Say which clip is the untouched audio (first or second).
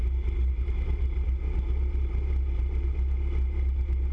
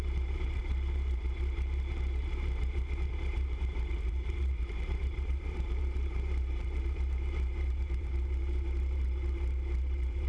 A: first